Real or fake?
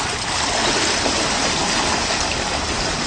real